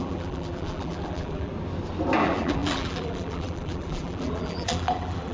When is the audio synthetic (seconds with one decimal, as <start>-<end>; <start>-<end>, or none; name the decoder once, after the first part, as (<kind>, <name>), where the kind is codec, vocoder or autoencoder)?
0.0-1.5 (vocoder, BigVGAN v2); 2.2-5.3